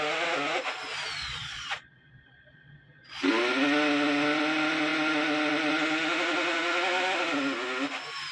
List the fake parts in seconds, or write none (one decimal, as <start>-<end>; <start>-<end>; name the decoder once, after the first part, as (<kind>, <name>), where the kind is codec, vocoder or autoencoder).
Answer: 1.2-3.3 (vocoder, Vocos)